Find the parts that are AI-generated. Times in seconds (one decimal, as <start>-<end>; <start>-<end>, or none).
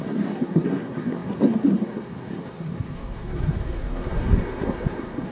0.0-5.3